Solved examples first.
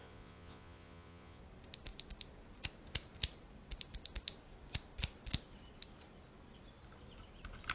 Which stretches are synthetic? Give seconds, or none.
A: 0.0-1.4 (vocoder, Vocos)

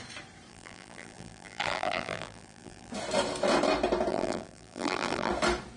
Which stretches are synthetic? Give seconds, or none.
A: 0.5-2.9 (vocoder, BigVGAN v2); 4.1-5.3

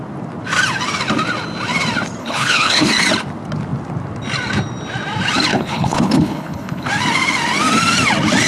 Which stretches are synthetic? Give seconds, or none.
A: 2.2-2.9 (codec, HILCodec); 5.5-6.9